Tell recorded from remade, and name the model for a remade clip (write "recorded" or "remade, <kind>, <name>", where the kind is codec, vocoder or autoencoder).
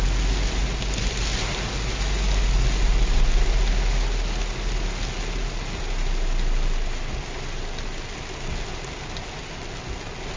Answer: recorded